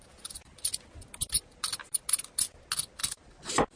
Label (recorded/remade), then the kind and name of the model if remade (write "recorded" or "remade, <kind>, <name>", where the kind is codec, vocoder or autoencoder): recorded